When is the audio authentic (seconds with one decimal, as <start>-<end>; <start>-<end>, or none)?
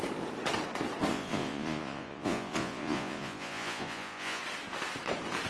0.0-1.1; 4.4-5.5